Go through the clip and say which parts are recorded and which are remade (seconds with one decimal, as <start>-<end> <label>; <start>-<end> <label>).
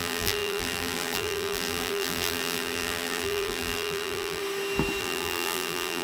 0.0-4.4 remade; 4.4-5.0 recorded; 5.0-6.0 remade